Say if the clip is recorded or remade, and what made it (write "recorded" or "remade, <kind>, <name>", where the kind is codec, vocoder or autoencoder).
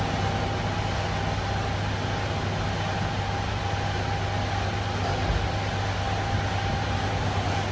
recorded